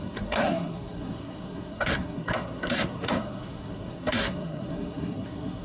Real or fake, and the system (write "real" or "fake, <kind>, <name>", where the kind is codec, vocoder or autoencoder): fake, codec, SNAC